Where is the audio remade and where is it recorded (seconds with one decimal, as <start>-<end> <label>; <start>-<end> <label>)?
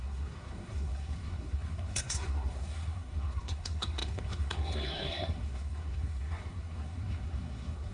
0.0-7.9 remade